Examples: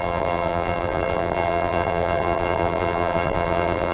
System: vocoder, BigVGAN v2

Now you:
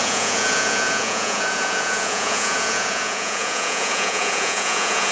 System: vocoder, Vocos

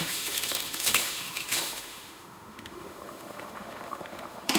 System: autoencoder, DAC-VAE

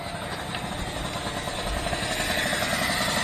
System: none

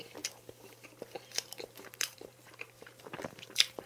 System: vocoder, BigVGAN v2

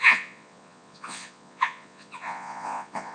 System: vocoder, Vocos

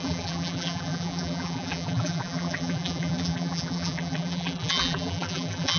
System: vocoder, BigVGAN v2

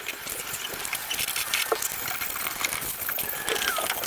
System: none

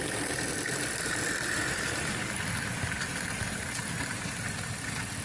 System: none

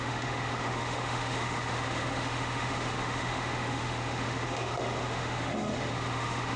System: autoencoder, DAC-VAE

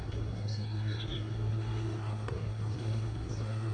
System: codec, SNAC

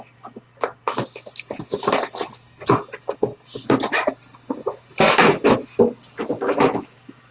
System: none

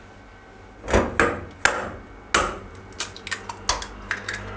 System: none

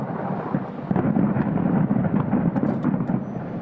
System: none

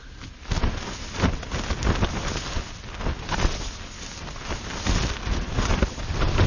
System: none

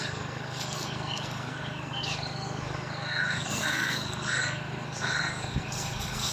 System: codec, SNAC